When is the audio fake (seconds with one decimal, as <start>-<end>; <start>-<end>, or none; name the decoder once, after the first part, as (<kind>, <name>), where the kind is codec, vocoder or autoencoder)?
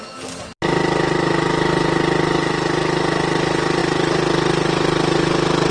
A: none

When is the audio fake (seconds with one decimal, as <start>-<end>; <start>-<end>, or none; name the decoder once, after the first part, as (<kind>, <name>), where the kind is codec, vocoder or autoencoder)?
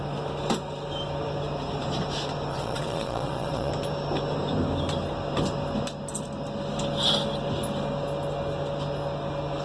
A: 2.5-3.7 (vocoder, Vocos)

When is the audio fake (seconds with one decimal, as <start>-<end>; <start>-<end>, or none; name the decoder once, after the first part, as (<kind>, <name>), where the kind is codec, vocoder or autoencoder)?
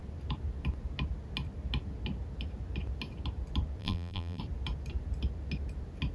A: 3.8-4.4 (vocoder, BigVGAN v2)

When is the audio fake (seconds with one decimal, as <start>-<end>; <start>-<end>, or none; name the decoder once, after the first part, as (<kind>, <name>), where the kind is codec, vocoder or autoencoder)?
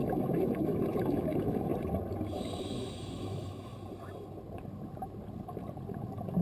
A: 0.0-1.7 (autoencoder, DAC-VAE); 2.6-3.7